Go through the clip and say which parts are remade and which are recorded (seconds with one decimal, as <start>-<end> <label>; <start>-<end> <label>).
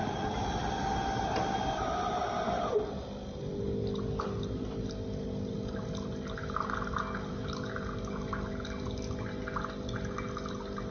0.0-10.9 recorded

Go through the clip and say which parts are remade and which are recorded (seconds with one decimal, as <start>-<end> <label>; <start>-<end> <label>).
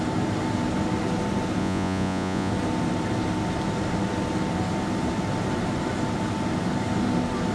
0.0-1.6 recorded; 1.6-2.5 remade; 2.5-7.5 recorded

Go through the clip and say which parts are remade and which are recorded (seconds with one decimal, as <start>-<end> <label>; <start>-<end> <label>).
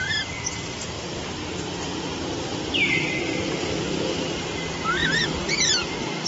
0.0-0.8 remade; 0.8-3.6 recorded; 3.6-5.0 remade; 5.0-6.3 recorded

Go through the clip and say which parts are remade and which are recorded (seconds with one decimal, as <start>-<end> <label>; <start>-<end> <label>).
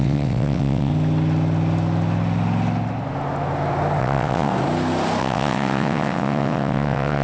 0.0-0.9 remade; 0.9-4.0 recorded; 4.0-4.5 remade; 4.5-5.2 recorded; 5.2-7.2 remade